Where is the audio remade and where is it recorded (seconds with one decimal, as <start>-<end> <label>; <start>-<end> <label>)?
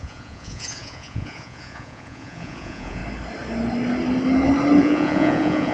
0.0-3.0 remade; 3.0-4.8 recorded; 4.8-5.7 remade